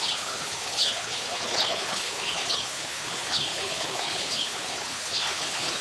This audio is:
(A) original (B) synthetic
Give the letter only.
B